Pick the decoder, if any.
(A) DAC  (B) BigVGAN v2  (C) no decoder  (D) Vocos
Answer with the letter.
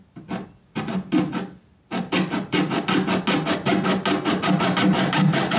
C